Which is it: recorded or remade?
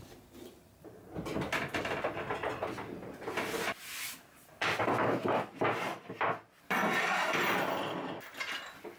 recorded